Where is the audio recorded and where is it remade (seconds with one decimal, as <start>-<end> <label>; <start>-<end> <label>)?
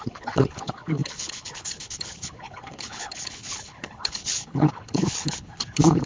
0.0-6.1 remade